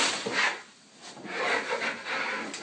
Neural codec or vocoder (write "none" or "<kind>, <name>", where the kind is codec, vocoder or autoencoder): none